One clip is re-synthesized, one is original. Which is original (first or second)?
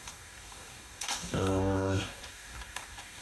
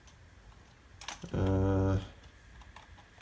second